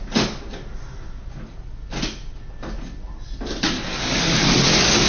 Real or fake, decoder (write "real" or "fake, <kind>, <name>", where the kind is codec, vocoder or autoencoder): real